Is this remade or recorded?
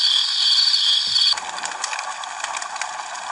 recorded